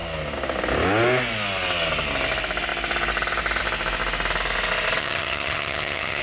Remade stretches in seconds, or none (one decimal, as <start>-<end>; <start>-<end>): 5.0-6.2